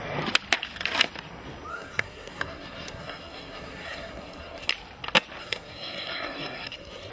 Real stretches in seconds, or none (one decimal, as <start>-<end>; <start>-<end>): 0.0-1.7; 4.7-5.4